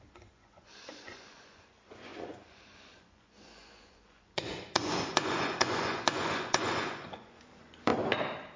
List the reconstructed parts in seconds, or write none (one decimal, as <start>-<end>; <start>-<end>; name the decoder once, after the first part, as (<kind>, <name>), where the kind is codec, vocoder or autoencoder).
0.0-7.9 (vocoder, Vocos)